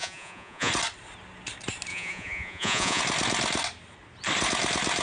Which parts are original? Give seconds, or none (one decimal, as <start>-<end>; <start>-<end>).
0.7-1.9; 3.0-5.0